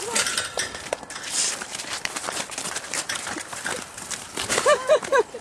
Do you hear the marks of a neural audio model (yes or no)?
yes